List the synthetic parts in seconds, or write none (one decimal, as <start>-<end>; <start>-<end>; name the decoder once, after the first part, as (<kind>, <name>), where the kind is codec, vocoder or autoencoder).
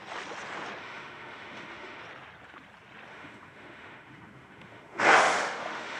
0.8-2.0 (autoencoder, DAC-VAE); 3.1-6.0